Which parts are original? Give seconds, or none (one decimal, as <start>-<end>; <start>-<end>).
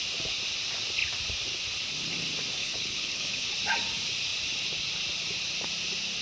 0.0-2.6; 3.5-6.2